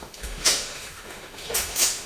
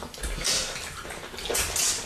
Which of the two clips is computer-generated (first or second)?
first